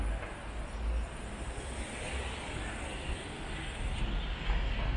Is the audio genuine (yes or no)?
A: yes